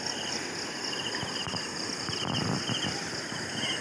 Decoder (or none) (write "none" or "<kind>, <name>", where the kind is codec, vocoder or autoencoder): none